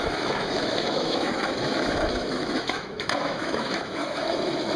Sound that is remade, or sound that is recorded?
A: remade